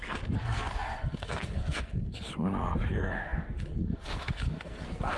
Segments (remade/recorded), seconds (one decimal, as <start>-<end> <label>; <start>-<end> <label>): 0.0-2.3 remade; 2.3-2.9 recorded; 2.9-5.2 remade